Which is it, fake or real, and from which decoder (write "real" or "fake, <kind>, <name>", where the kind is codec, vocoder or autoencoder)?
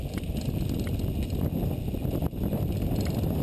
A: real